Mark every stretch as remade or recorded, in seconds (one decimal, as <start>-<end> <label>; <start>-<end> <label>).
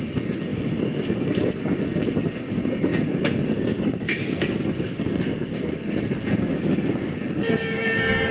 0.0-8.3 remade